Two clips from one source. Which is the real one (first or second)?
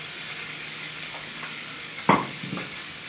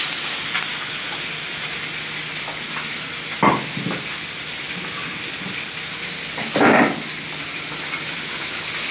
second